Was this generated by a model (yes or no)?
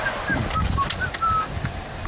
no